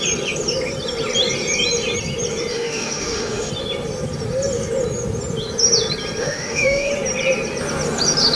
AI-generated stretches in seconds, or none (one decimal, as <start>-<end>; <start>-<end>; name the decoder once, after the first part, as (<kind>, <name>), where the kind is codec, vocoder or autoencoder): 2.5-3.5 (autoencoder, DAC-VAE); 6.2-6.9